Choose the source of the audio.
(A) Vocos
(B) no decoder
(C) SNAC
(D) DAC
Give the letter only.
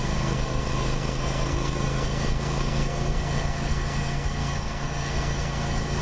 C